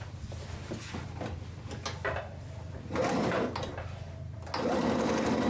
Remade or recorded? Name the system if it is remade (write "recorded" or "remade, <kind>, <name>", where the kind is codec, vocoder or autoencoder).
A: recorded